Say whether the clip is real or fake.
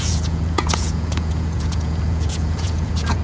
fake